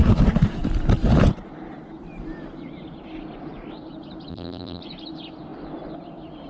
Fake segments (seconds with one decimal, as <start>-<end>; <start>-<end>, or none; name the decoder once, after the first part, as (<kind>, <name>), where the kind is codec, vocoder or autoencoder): 4.3-4.8 (vocoder, BigVGAN v2)